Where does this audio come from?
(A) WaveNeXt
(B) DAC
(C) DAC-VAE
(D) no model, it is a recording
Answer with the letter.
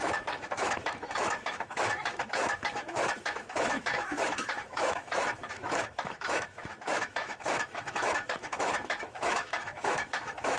C